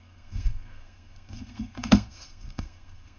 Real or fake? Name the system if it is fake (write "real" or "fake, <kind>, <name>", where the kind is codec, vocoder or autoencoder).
fake, codec, SNAC